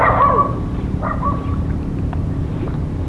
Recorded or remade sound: recorded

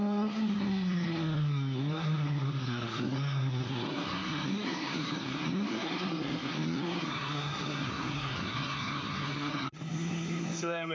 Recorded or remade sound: remade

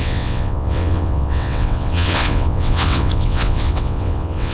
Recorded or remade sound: remade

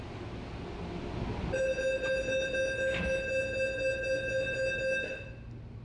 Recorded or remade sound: recorded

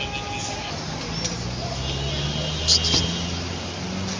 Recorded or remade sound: recorded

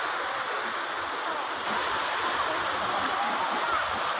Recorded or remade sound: recorded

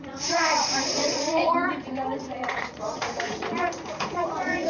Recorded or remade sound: remade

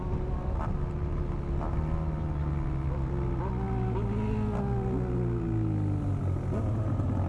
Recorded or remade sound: recorded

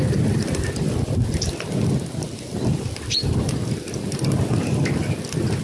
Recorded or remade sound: recorded